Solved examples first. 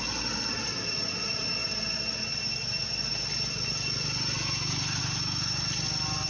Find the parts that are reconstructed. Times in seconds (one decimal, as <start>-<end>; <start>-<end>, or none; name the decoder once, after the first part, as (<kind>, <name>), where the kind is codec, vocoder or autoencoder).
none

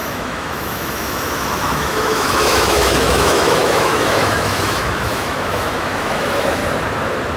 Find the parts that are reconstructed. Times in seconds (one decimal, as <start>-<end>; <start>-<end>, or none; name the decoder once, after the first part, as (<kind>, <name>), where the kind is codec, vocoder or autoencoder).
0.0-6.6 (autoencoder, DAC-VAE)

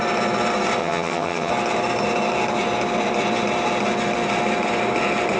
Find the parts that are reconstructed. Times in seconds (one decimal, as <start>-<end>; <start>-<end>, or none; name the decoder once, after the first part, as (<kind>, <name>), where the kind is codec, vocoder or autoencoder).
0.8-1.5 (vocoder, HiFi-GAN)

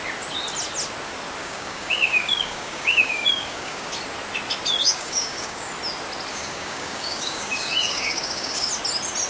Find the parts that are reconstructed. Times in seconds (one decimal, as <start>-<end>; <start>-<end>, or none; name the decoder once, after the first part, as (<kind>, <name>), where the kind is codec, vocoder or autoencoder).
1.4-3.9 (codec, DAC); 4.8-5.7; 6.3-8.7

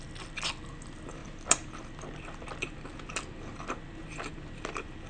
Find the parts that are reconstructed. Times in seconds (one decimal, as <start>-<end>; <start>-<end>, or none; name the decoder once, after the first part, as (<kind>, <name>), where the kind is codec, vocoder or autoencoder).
none

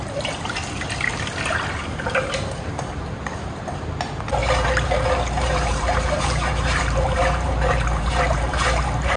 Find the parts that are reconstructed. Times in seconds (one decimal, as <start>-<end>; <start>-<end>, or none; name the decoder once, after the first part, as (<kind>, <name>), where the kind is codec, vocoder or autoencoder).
1.8-3.8 (vocoder, BigVGAN v2); 4.4-9.2